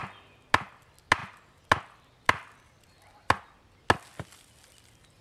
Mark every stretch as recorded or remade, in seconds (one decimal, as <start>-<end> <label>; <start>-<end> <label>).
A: 0.0-5.2 recorded